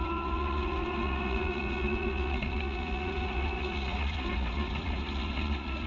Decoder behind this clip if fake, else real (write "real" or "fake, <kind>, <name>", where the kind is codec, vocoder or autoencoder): fake, vocoder, Vocos